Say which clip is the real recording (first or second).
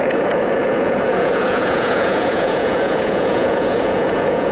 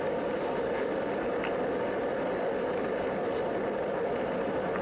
second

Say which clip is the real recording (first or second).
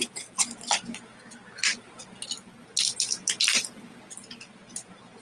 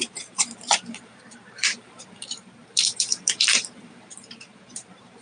first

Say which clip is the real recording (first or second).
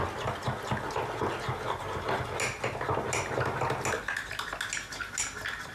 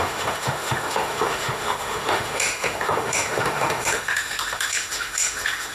first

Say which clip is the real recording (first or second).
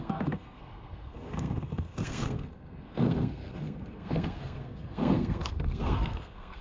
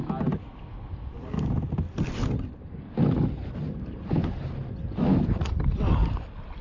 second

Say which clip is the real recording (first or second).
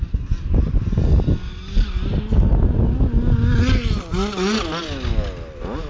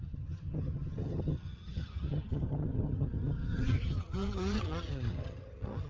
first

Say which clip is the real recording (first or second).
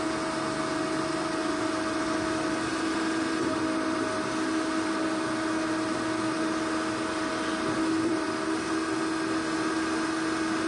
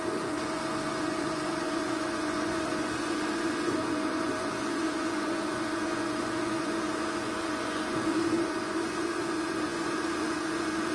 first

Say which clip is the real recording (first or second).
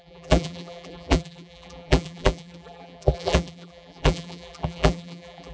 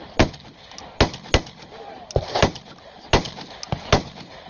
second